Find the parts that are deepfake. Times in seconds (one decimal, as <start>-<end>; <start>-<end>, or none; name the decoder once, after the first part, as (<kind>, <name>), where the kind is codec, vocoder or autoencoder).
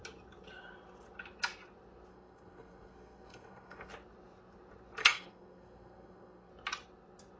2.1-3.9 (codec, SNAC); 5.0-6.5